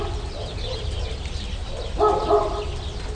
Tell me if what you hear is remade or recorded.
recorded